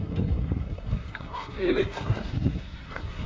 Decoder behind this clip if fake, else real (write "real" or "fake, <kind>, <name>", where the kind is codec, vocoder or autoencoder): fake, codec, SNAC